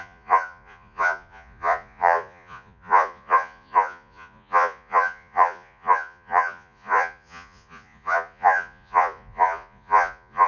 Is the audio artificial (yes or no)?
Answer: yes